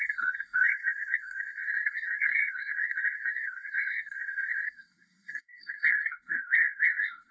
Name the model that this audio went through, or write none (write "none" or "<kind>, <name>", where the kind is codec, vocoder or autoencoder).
codec, SNAC